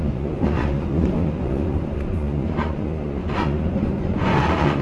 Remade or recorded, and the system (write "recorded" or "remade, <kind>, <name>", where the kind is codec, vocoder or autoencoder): remade, vocoder, Vocos